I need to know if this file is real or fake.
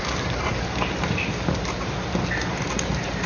real